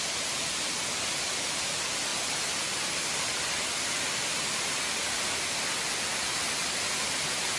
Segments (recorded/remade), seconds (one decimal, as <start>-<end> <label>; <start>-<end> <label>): 0.0-7.6 recorded